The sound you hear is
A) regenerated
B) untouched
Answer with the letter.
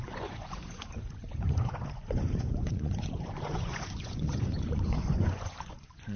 A